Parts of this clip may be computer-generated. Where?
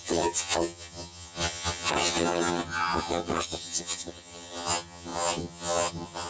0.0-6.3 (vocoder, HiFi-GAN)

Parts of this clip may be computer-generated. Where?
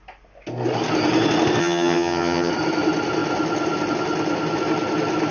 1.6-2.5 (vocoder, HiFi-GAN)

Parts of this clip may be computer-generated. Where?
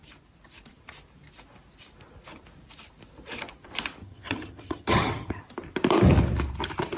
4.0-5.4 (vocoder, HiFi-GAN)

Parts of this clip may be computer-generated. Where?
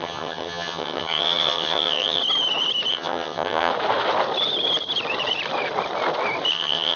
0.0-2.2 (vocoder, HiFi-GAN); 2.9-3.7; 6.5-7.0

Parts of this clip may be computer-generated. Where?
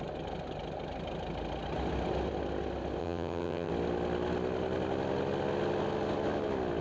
3.0-3.7 (vocoder, HiFi-GAN)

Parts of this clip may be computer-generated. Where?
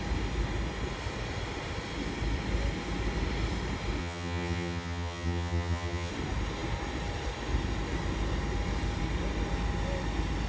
4.0-6.1 (vocoder, HiFi-GAN)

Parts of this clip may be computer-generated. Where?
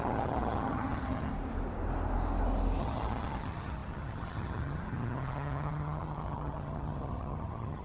0.0-1.3 (vocoder, HiFi-GAN); 2.8-7.8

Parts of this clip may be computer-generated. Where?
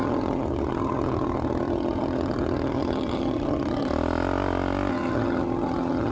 0.0-3.9 (vocoder, HiFi-GAN); 4.9-6.1